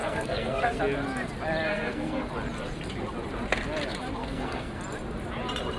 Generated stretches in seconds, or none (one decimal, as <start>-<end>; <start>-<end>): 0.0-0.8; 1.7-2.3; 4.2-4.8